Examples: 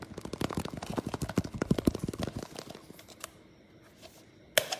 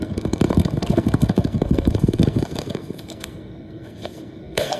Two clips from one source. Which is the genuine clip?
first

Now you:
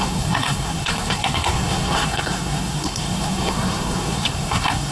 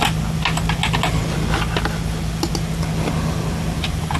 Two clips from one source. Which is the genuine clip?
second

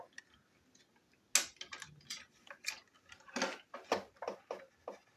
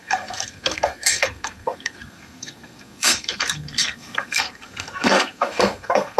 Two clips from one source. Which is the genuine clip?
first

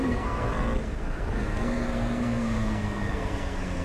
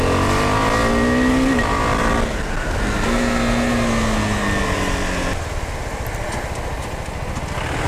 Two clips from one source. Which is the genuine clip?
second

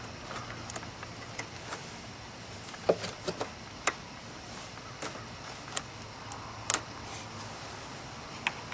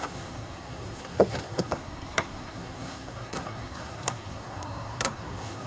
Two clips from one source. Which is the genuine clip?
first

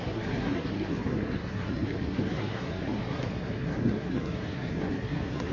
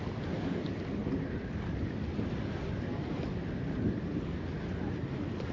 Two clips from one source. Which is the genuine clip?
second